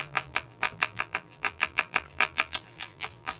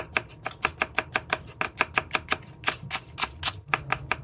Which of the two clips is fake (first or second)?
first